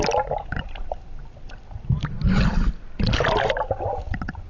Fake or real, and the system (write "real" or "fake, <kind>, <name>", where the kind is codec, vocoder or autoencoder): real